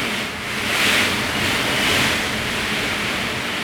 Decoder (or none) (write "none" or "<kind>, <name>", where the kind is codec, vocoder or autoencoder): none